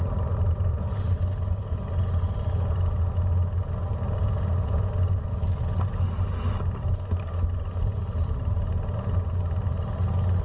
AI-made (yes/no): no